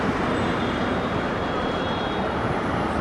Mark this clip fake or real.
fake